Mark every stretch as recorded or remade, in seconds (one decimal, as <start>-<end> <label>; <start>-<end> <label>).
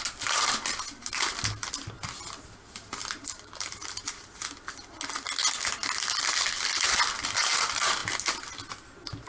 0.0-3.0 recorded; 3.0-3.7 remade; 3.7-9.3 recorded